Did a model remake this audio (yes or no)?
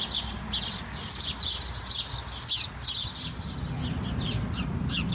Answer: no